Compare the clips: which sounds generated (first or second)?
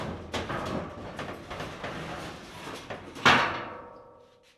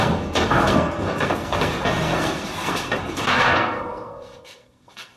second